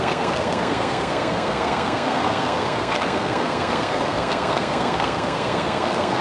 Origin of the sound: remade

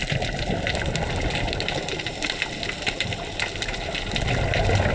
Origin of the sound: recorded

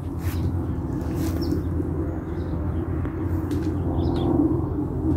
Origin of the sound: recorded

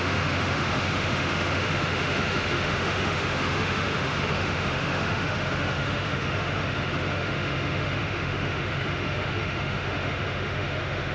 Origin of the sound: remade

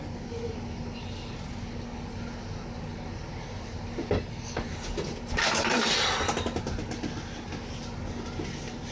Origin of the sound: recorded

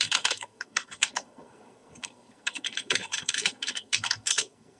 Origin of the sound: remade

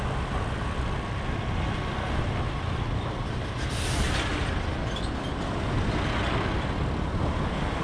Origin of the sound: recorded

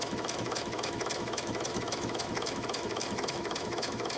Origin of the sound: remade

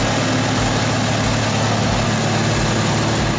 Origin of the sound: recorded